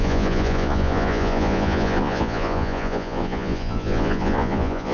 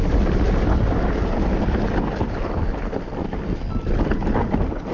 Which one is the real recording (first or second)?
second